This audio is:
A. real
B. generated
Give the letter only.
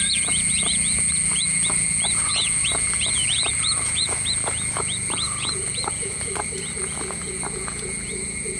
B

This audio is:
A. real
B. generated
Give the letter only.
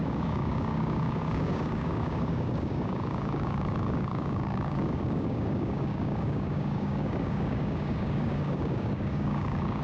B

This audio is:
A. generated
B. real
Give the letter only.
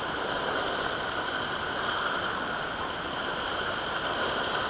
B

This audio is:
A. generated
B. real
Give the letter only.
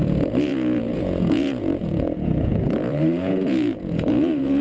A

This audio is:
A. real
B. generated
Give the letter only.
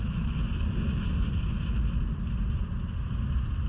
A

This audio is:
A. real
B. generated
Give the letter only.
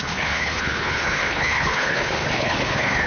B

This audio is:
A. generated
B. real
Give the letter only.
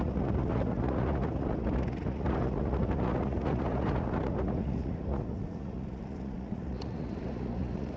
A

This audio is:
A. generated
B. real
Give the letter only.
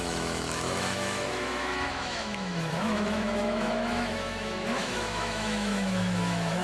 A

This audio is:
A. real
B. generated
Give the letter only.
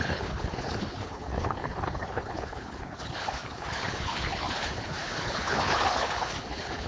B